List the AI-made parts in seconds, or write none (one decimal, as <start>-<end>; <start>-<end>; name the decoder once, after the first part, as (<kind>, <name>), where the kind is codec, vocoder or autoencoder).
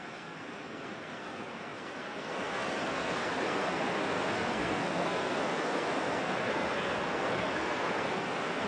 0.0-8.7 (codec, SNAC)